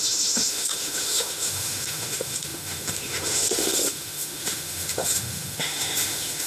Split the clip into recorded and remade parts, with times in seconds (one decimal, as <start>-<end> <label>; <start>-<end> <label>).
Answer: 0.0-6.5 remade